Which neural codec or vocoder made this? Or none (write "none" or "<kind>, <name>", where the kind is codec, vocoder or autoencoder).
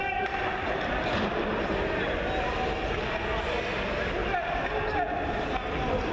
none